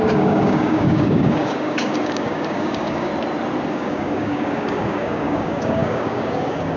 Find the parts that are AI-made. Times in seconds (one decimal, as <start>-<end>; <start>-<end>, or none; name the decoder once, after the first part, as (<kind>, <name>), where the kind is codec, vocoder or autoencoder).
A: 0.0-3.1 (codec, DAC); 3.7-6.8